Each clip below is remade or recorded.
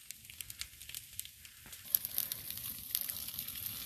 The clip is recorded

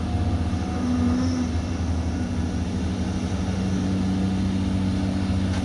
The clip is recorded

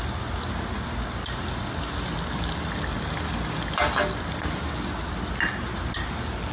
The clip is recorded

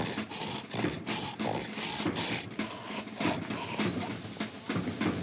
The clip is recorded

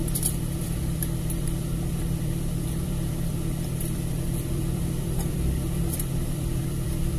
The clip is remade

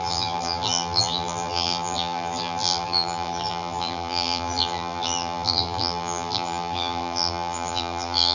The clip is remade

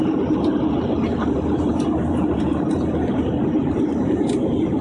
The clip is remade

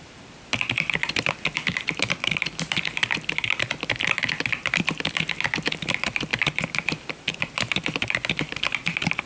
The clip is remade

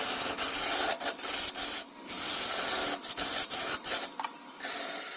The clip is recorded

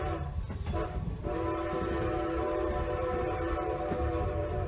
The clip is remade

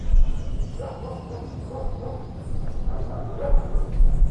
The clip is recorded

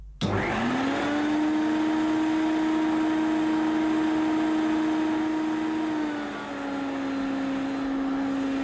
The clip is recorded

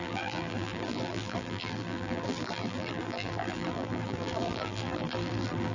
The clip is remade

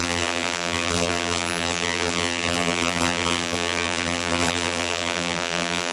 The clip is remade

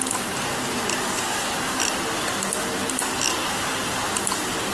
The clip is remade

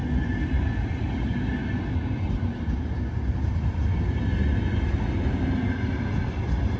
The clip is recorded